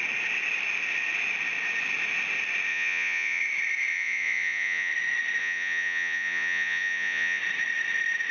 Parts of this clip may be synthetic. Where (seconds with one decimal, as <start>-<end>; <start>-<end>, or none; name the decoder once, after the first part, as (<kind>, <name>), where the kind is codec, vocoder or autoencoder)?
2.7-3.4 (vocoder, Vocos); 3.9-4.9; 5.4-7.4